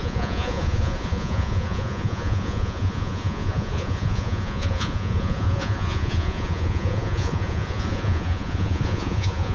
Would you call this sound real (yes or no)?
no